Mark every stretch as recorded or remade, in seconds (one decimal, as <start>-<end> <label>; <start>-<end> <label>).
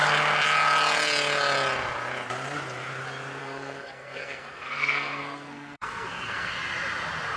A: 0.0-3.4 recorded; 3.4-6.5 remade; 6.5-7.4 recorded